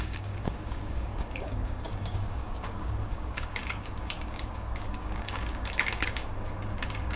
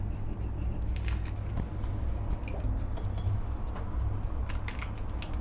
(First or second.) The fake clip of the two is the first